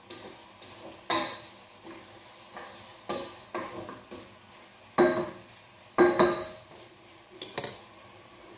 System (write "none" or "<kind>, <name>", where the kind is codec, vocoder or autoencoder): none